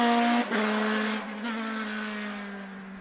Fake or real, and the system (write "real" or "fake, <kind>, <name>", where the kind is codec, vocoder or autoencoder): real